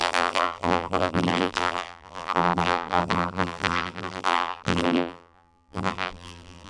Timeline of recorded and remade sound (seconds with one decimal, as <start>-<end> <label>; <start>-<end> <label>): 0.0-6.7 remade